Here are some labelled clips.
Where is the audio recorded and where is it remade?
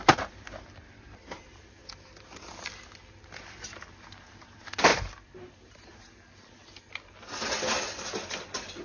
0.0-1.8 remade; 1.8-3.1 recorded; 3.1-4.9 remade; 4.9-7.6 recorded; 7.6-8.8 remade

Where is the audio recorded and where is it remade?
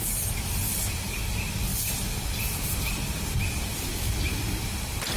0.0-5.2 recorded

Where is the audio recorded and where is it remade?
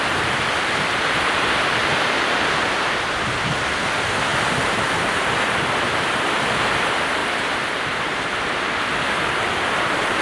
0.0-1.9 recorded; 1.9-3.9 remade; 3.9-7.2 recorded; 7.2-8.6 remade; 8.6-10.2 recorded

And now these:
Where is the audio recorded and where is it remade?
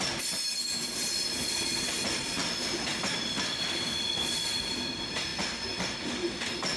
0.0-6.8 recorded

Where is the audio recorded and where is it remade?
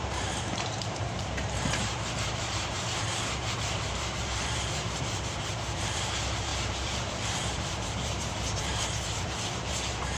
0.0-10.2 remade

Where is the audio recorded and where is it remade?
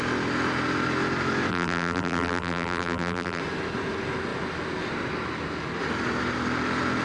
0.0-1.5 recorded; 1.5-3.4 remade; 3.4-7.0 recorded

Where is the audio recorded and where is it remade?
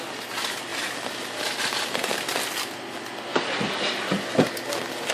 0.0-0.7 recorded; 0.7-1.4 remade; 1.4-3.3 recorded; 3.3-3.9 remade; 3.9-5.1 recorded